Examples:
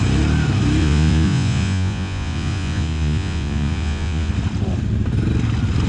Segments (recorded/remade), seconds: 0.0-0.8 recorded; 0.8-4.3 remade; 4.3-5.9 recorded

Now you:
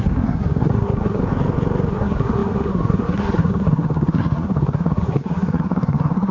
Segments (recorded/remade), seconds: 0.0-1.2 remade; 1.2-1.9 recorded; 1.9-6.3 remade

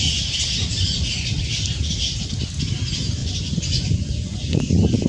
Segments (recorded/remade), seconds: 0.0-0.7 recorded; 0.7-1.3 remade; 1.3-3.2 recorded; 3.2-5.1 remade

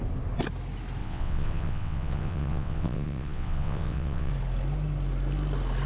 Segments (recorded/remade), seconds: 0.0-1.0 recorded; 1.0-4.3 remade; 4.3-5.9 recorded